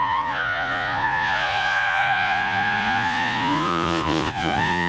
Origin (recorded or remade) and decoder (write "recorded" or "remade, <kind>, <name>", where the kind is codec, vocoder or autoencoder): remade, vocoder, Vocos